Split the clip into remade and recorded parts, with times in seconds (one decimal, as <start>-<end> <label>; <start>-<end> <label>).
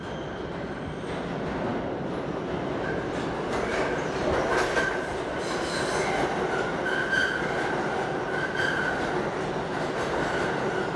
0.0-11.0 recorded